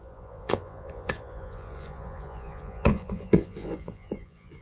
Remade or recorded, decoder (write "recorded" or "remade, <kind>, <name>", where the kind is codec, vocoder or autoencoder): remade, vocoder, Vocos